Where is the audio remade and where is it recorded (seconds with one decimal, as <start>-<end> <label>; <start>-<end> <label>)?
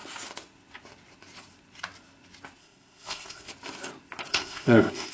0.0-2.6 recorded; 2.6-3.5 remade; 3.5-4.3 recorded; 4.3-5.1 remade